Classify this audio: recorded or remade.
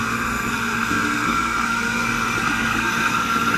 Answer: remade